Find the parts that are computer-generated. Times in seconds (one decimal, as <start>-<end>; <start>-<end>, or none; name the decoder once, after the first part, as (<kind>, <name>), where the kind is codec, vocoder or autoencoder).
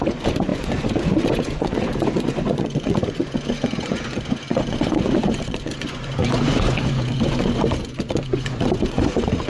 0.0-9.5 (vocoder, Vocos)